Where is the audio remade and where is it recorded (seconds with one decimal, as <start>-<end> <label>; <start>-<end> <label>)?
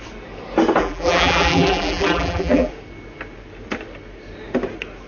0.0-0.8 recorded; 0.8-2.7 remade; 2.7-5.1 recorded